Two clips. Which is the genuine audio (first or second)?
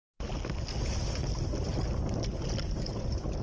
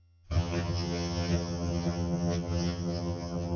first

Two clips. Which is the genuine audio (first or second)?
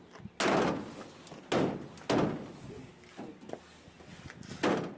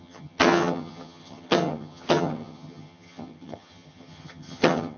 first